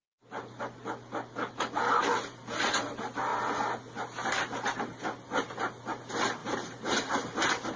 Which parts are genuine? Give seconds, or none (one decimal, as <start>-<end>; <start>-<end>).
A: 0.6-7.8